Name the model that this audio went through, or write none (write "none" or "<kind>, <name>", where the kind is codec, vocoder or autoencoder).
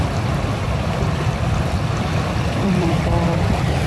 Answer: vocoder, BigVGAN v2